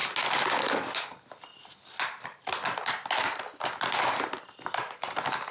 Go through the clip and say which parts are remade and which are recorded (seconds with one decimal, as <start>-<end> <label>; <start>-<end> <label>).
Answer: 0.0-5.5 recorded